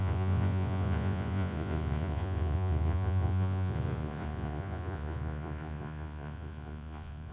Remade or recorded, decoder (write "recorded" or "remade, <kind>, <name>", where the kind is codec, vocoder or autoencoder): remade, vocoder, Vocos